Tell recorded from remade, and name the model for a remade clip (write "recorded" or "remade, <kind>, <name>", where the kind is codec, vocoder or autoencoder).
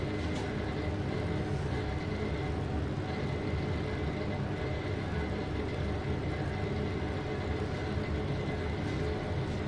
recorded